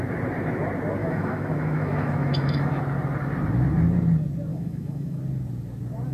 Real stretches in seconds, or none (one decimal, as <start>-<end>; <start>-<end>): 0.0-1.0; 2.8-4.5; 5.2-6.1